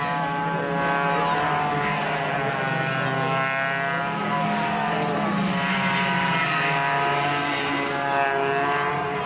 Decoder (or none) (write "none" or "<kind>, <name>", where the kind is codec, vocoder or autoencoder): none